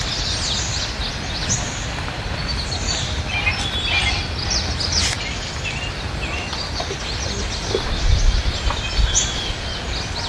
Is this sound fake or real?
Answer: real